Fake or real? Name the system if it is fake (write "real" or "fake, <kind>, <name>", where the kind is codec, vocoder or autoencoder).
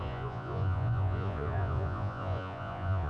fake, vocoder, Vocos